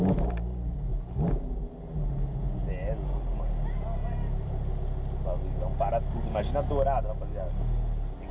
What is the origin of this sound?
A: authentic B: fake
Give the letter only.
A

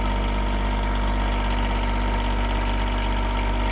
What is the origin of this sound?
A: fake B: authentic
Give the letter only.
B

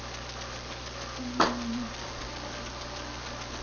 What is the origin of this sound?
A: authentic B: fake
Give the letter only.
A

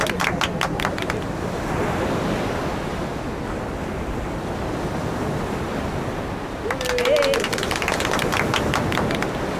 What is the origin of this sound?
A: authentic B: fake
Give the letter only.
A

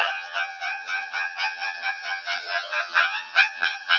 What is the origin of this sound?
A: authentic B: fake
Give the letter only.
B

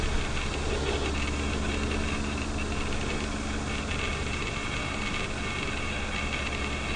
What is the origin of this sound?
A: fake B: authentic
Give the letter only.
B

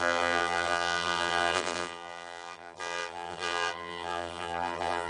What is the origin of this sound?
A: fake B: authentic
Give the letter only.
A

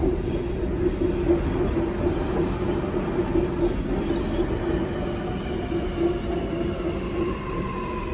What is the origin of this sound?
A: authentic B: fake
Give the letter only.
A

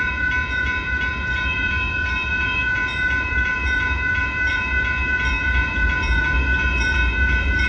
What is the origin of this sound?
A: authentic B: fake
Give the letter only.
B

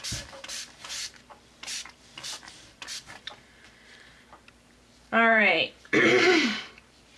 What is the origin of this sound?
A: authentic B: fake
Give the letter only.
B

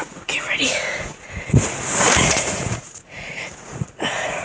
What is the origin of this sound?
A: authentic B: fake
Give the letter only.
B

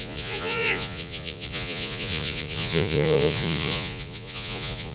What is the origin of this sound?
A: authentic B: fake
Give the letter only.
B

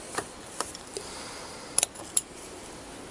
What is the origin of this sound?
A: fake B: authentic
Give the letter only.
A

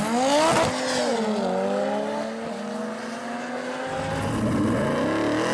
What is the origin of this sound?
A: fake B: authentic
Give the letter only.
B